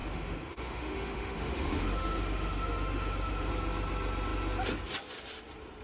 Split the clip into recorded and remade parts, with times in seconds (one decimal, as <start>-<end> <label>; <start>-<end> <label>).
0.0-3.5 remade; 3.5-5.8 recorded